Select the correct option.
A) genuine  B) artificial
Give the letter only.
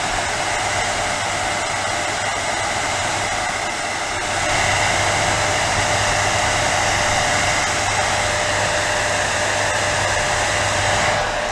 A